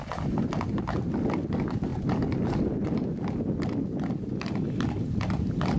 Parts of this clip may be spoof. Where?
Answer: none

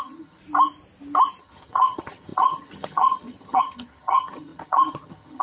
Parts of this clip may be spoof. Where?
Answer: 0.0-0.4 (vocoder, HiFi-GAN); 1.4-5.4

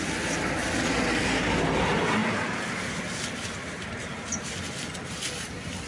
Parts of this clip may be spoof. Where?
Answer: none

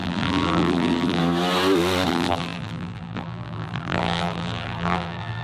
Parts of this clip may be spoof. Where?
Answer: 0.0-1.2 (vocoder, BigVGAN v2); 2.1-5.4

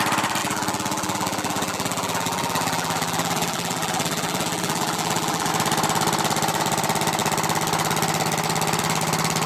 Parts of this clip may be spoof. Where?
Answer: 0.4-5.5 (vocoder, BigVGAN v2)

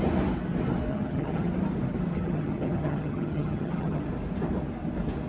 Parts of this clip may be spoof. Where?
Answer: 0.9-1.5 (vocoder, HiFi-GAN); 2.1-4.0